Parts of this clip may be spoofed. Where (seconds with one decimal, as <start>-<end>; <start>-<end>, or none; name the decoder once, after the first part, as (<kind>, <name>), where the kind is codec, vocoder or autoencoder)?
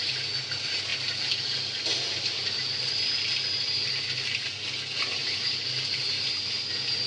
none